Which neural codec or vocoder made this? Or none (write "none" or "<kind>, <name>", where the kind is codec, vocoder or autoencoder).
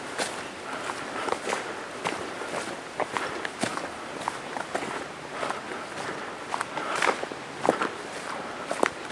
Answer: vocoder, BigVGAN v2